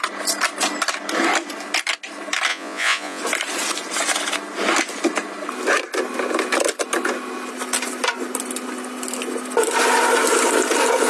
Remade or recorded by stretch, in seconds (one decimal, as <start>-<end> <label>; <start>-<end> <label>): 0.0-2.5 recorded; 2.5-3.2 remade; 3.2-11.1 recorded